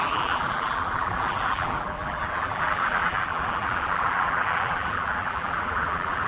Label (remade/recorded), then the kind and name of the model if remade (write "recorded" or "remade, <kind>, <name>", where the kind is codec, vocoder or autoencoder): remade, vocoder, BigVGAN v2